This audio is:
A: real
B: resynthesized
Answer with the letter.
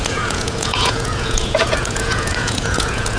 B